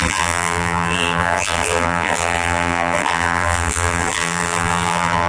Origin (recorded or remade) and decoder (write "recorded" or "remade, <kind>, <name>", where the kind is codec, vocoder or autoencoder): remade, vocoder, BigVGAN v2